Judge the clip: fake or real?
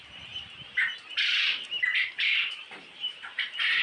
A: fake